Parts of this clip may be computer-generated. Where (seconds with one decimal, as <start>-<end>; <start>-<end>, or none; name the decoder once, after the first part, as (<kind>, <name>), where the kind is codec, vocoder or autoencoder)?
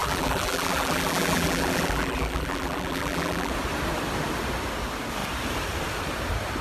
0.0-3.5 (vocoder, BigVGAN v2)